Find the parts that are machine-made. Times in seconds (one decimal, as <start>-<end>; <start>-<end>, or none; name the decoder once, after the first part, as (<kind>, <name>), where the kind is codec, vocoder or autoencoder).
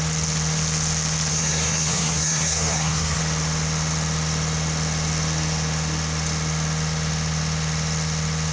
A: 1.3-3.2 (codec, SNAC)